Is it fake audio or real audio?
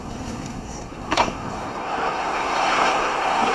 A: fake